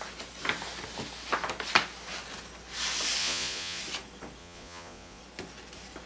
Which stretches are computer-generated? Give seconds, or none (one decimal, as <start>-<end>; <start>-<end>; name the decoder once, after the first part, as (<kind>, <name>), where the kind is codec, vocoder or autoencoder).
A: 3.2-3.8 (vocoder, Vocos); 4.4-5.2